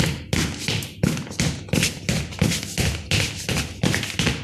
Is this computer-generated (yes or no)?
no